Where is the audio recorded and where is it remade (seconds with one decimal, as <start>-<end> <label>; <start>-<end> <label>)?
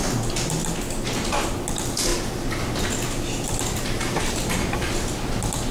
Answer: 0.0-5.7 recorded